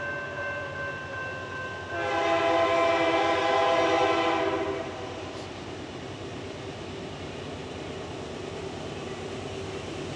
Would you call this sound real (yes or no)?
yes